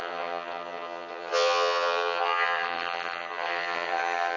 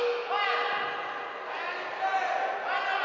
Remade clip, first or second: first